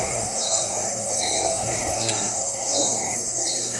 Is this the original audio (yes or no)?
no